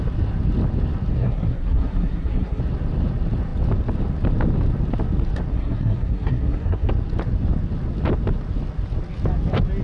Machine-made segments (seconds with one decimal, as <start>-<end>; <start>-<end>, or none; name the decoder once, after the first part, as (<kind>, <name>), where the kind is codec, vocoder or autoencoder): 1.1-2.6 (codec, SNAC); 5.5-6.9